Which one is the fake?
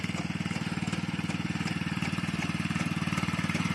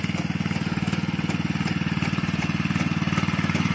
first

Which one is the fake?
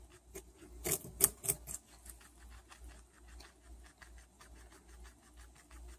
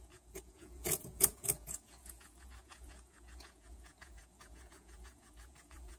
second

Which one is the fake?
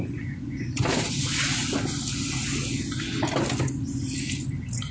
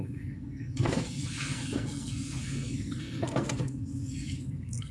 second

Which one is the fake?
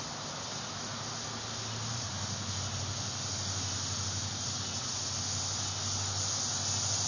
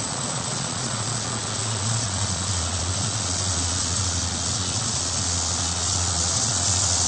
second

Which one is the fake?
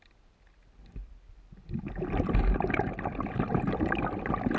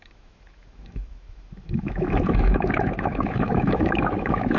second